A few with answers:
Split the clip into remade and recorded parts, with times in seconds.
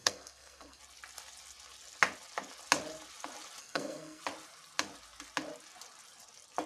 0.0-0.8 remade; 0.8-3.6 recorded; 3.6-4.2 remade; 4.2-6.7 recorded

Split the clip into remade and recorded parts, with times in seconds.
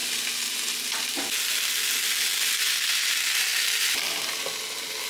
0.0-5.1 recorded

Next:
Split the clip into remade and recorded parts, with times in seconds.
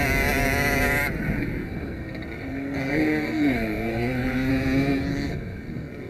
0.0-1.2 recorded; 1.2-4.5 remade; 4.5-5.1 recorded; 5.1-6.1 remade